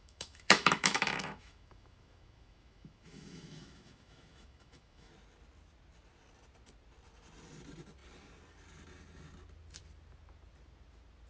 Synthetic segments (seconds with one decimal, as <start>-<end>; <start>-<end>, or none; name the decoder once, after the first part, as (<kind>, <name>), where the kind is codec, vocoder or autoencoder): 0.0-5.1 (autoencoder, DAC-VAE)